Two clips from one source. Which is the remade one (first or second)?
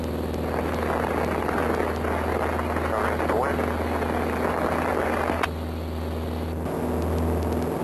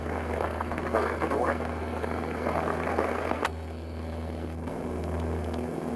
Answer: second